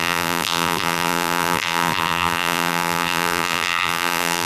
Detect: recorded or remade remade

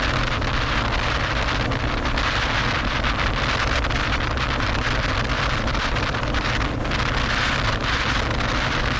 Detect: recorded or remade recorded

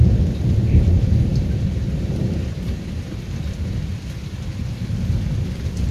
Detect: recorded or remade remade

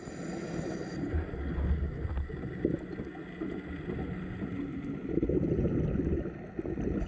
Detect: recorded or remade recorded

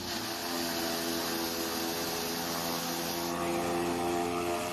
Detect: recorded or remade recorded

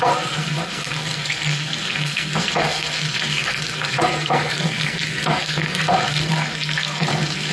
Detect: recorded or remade remade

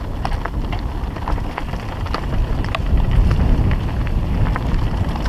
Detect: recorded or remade recorded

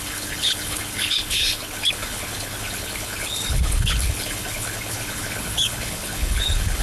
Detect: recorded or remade remade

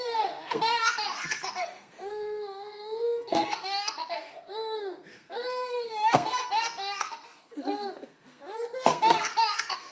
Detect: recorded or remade remade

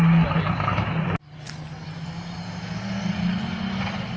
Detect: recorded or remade recorded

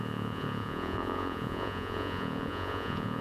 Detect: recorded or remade remade